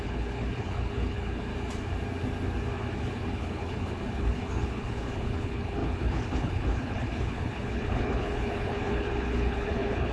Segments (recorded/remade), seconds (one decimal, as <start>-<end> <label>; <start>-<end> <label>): 0.0-1.5 remade; 1.5-3.1 recorded; 3.1-10.1 remade